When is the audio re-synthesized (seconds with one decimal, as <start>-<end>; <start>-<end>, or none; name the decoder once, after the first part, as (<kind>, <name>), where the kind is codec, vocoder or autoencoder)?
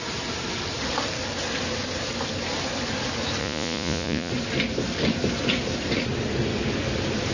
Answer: 3.4-4.3 (vocoder, Vocos)